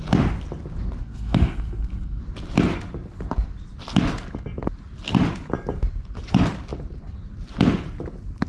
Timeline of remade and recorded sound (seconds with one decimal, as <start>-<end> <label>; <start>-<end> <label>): 0.0-1.0 recorded; 1.0-2.2 remade; 2.2-8.5 recorded